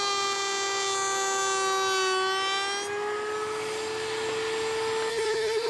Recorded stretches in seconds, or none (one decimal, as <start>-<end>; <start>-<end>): 0.0-5.1